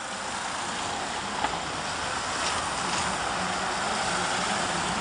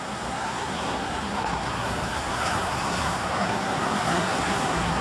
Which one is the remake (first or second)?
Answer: second